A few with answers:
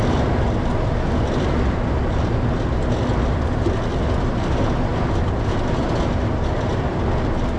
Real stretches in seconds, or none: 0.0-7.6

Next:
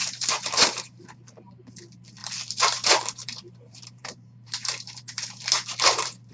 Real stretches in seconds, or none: 1.7-2.2

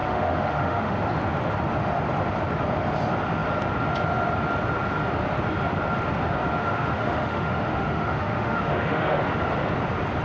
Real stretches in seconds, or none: 1.0-6.6; 9.2-10.2

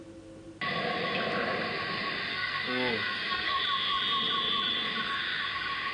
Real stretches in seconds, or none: 0.0-2.3; 3.6-5.9